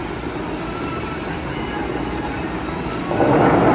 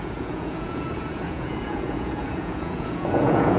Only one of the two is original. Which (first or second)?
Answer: first